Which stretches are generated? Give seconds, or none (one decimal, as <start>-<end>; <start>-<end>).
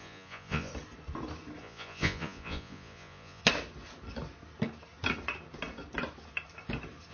0.0-0.7; 1.6-3.4